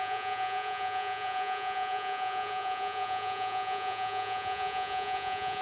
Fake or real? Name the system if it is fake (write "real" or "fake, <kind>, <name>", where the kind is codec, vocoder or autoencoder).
fake, vocoder, Vocos